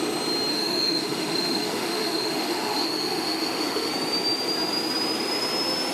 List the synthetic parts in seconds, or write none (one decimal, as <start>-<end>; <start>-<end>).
0.5-3.9

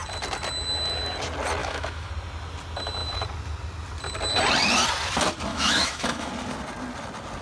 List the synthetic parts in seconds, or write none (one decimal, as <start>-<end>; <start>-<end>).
1.6-2.1; 5.5-6.3

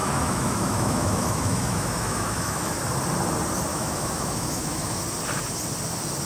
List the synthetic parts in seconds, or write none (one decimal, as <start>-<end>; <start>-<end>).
0.0-2.7; 3.7-5.0

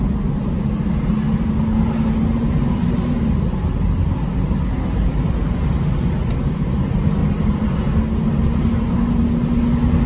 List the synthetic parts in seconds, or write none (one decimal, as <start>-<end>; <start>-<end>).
none